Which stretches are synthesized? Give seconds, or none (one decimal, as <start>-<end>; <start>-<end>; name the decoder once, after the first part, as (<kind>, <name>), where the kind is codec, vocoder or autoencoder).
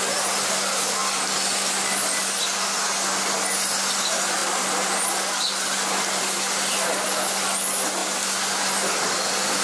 none